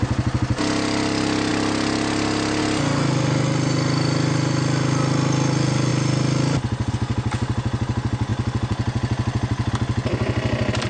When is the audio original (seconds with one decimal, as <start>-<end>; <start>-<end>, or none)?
0.0-10.9